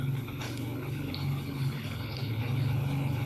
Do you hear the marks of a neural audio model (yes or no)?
yes